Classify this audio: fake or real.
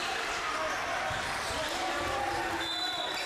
real